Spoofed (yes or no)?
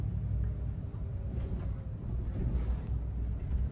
no